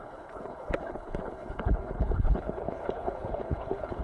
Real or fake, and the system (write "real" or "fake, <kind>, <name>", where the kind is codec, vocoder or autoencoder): fake, codec, HILCodec